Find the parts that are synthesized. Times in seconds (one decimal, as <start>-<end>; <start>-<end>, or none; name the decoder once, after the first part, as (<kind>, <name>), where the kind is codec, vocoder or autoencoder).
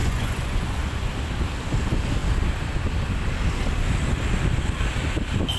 0.0-1.1 (vocoder, Vocos)